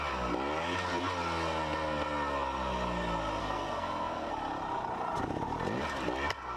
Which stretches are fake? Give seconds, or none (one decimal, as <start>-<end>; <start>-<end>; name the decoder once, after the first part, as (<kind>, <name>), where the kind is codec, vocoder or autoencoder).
3.4-4.3 (codec, SNAC)